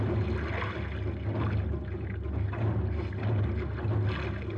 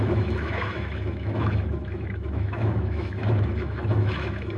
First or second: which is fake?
second